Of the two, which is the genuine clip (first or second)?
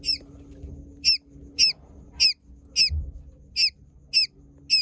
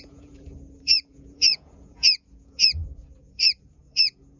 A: first